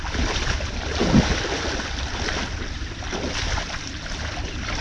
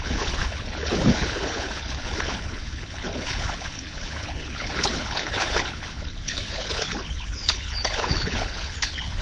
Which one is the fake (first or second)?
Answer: second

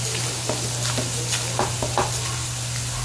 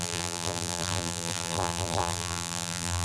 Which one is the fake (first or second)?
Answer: second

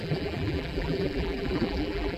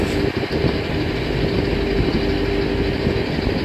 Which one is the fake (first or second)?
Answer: first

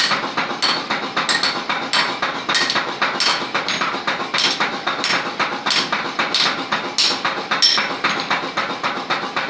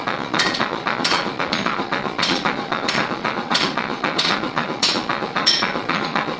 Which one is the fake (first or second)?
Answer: second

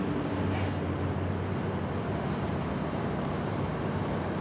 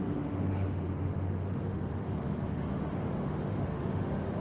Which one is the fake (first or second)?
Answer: second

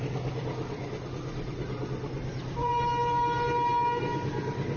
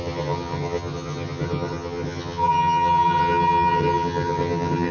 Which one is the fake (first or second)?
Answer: second